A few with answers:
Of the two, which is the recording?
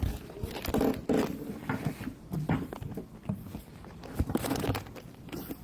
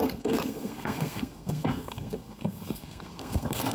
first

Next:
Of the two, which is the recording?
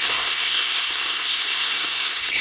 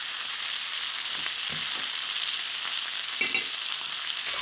second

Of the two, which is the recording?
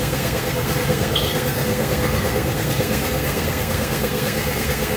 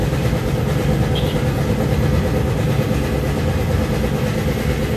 second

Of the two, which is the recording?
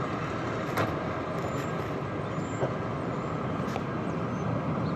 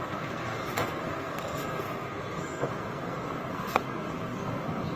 first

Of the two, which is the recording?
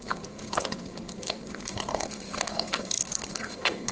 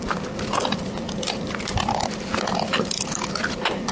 second